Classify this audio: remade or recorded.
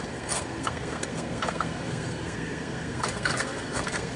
remade